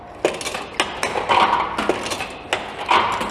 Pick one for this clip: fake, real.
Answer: real